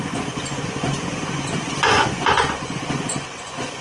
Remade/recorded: remade